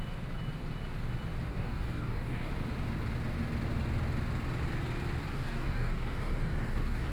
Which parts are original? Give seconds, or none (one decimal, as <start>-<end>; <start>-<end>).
0.0-1.5; 2.5-5.3